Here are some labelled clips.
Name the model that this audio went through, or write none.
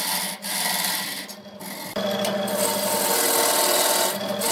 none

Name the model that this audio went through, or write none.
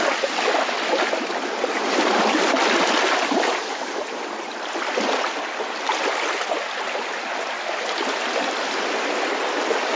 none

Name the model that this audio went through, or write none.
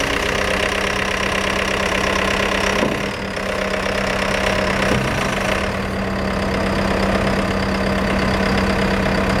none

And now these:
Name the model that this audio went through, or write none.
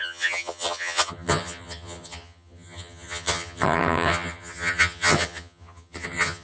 vocoder, HiFi-GAN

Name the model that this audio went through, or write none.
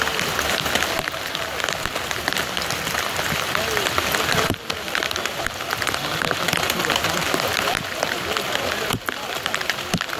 none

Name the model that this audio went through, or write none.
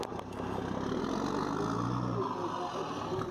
none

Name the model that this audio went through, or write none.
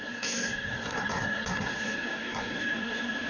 codec, SNAC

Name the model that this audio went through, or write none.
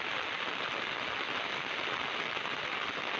none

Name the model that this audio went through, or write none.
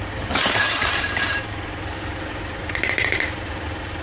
vocoder, BigVGAN v2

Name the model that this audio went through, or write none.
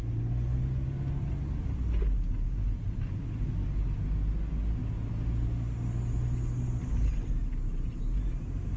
none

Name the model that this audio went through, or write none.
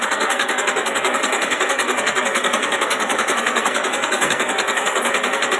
codec, SNAC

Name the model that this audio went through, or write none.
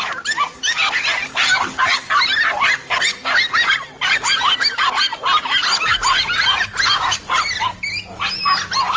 none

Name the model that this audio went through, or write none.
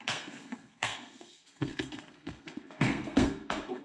codec, SNAC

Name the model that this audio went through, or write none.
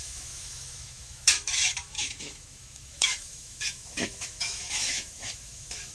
autoencoder, DAC-VAE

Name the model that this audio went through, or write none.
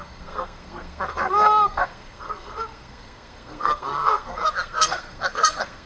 codec, SNAC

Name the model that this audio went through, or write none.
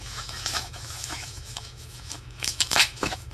autoencoder, DAC-VAE